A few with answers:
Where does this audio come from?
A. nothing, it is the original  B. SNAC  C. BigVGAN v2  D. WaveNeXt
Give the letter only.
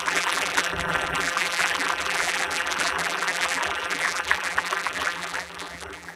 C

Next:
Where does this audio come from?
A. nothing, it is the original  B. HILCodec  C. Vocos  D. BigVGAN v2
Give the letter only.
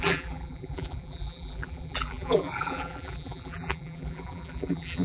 D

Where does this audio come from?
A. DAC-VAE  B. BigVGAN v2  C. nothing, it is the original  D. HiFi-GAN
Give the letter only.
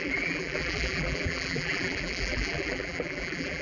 B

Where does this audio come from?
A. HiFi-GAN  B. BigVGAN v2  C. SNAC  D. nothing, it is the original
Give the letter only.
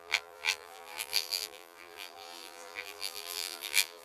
B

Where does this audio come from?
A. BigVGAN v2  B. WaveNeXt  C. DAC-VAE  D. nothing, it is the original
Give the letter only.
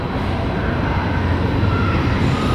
D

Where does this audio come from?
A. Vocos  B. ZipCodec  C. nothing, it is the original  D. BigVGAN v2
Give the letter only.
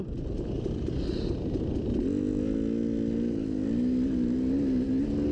C